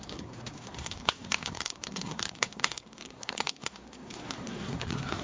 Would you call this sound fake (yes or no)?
yes